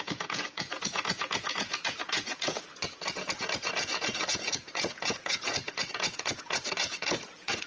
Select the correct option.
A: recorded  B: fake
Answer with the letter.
B